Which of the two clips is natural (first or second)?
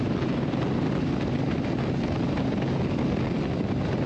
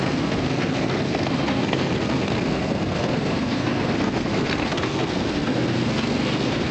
first